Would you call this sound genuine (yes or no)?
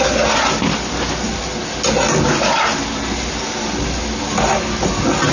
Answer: yes